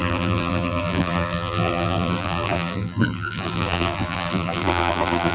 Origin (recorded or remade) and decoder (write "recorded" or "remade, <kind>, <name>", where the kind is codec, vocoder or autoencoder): remade, vocoder, BigVGAN v2